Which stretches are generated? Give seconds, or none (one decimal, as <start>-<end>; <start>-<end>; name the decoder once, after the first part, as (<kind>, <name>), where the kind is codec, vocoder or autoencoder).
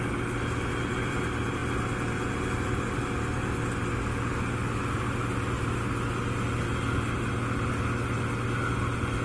none